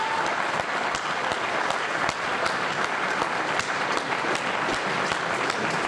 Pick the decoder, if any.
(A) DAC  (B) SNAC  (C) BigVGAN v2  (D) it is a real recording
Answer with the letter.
C